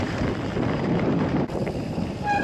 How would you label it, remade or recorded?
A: remade